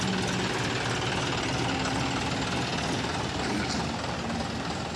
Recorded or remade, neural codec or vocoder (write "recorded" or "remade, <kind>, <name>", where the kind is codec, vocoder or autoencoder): recorded